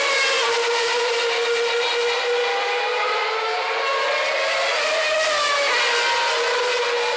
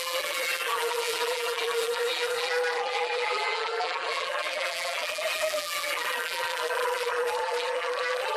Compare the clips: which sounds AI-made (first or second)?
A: second